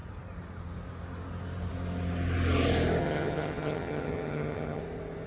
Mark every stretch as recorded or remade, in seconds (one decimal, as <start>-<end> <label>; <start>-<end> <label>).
0.0-3.0 recorded; 3.0-4.8 remade; 4.8-5.3 recorded